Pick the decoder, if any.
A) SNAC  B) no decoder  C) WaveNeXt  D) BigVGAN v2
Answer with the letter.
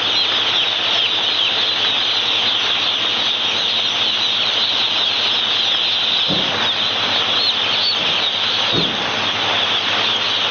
B